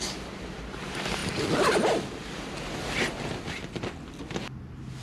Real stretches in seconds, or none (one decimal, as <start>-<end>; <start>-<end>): 0.0-5.0